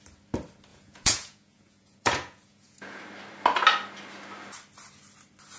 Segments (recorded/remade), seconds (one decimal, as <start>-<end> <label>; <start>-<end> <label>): 0.0-0.7 recorded; 0.7-3.0 remade; 3.0-5.6 recorded